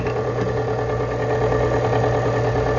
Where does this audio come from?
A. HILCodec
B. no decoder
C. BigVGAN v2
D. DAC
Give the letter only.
B